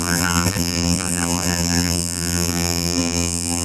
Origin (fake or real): fake